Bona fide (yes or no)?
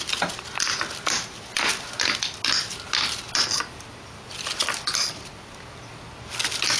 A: yes